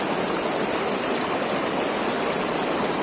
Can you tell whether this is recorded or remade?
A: recorded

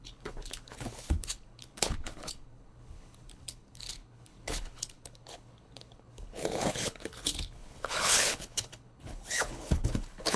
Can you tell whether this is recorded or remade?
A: remade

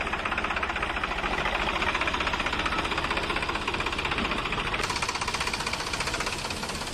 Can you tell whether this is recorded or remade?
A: remade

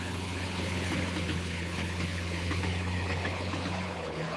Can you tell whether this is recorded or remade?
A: remade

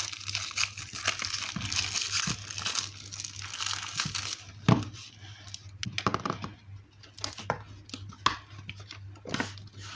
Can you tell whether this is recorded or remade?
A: recorded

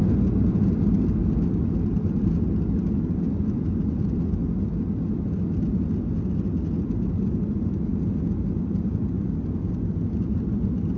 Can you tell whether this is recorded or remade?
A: recorded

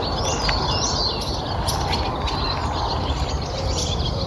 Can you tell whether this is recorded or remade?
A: recorded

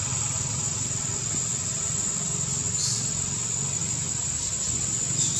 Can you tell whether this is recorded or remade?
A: recorded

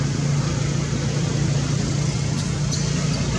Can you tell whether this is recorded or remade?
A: recorded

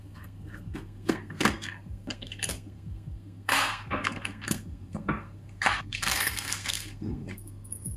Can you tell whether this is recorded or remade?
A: remade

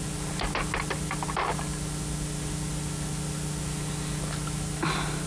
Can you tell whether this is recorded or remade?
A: recorded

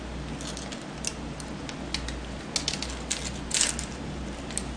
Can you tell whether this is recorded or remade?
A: recorded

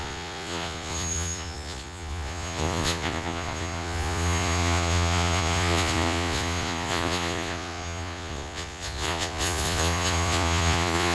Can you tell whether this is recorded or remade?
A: remade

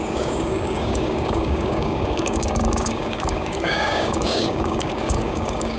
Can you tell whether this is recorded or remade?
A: remade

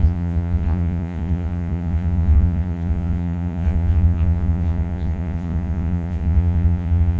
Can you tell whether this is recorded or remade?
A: remade